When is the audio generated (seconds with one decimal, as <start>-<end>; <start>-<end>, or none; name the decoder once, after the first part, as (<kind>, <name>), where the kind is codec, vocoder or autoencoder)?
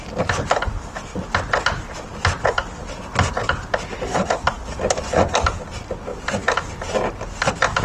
1.1-1.9 (vocoder, BigVGAN v2)